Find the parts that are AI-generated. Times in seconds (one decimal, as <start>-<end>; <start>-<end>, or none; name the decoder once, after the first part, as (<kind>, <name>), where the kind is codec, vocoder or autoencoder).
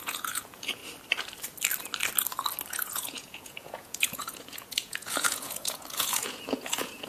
0.0-0.8 (vocoder, Vocos); 2.7-7.1